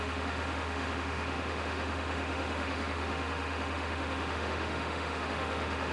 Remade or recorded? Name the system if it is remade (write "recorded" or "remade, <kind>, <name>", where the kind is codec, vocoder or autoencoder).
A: remade, autoencoder, DAC-VAE